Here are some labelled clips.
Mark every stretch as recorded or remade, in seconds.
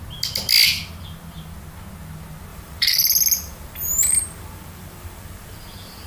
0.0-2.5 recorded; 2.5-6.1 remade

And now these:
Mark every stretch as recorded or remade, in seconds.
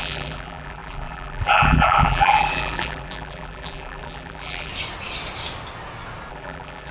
0.0-4.7 remade; 4.7-6.3 recorded; 6.3-6.9 remade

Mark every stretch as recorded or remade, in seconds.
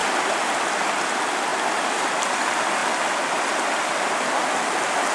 0.0-5.1 recorded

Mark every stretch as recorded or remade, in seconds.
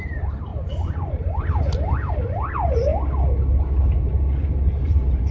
0.0-0.5 remade; 0.5-2.1 recorded; 2.1-2.9 remade; 2.9-3.6 recorded; 3.6-4.1 remade; 4.1-4.8 recorded; 4.8-5.3 remade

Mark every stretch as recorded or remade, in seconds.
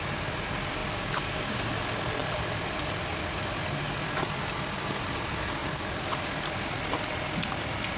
0.0-0.8 recorded; 0.8-3.8 remade; 3.8-5.6 recorded; 5.6-6.7 remade; 6.7-8.0 recorded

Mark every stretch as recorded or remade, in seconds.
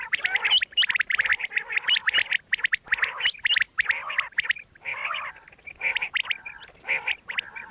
0.0-7.7 recorded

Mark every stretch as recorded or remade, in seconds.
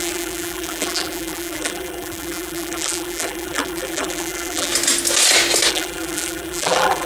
0.0-4.7 remade; 4.7-5.7 recorded; 5.7-7.1 remade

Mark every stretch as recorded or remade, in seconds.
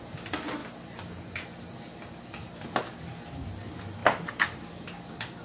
0.0-4.0 recorded; 4.0-4.7 remade; 4.7-5.4 recorded